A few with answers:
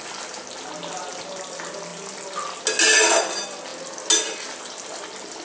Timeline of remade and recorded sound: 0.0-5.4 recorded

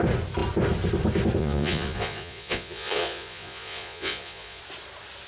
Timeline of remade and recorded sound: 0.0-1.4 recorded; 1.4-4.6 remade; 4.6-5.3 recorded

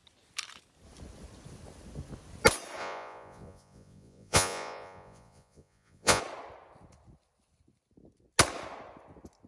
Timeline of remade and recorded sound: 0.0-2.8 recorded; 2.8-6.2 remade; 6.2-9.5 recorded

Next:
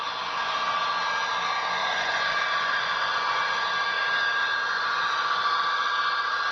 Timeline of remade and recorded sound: 0.0-1.8 recorded; 1.8-3.7 remade; 3.7-4.7 recorded; 4.7-5.9 remade; 5.9-6.5 recorded